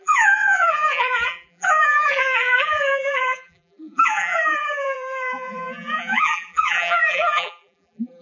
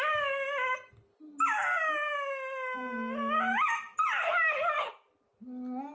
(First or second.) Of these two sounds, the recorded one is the second